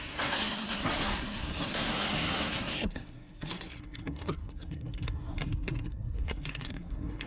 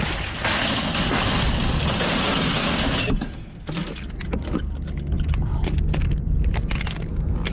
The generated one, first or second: first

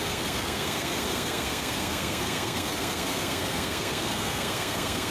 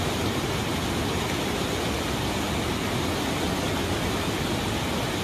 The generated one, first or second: first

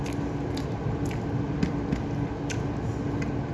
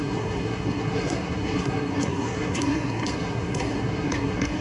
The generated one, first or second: second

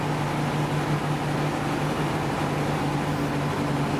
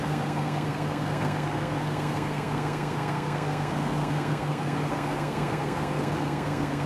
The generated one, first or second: second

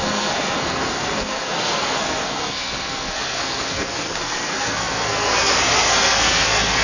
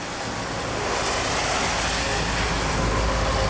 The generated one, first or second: first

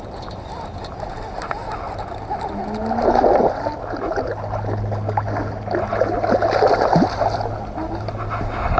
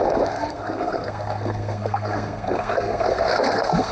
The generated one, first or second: second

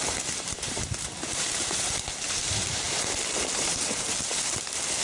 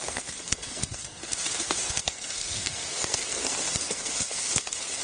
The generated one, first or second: second